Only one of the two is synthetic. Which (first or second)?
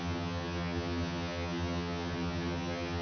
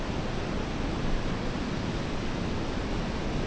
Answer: first